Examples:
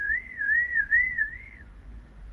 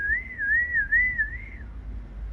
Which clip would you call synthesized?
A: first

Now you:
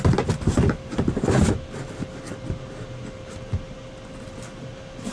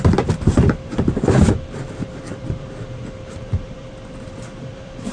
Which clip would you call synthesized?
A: second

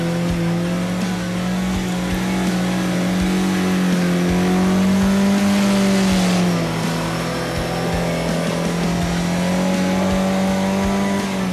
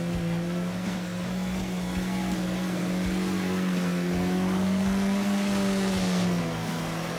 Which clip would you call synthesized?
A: second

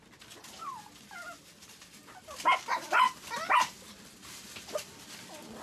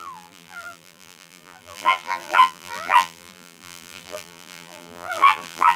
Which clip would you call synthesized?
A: second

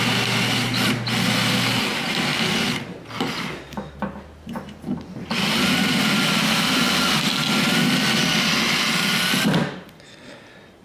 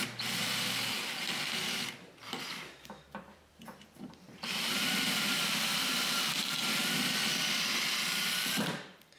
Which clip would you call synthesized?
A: second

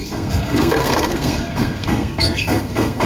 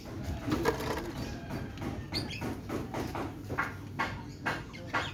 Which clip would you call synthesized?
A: first